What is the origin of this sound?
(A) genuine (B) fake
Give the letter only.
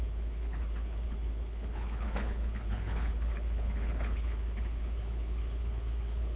B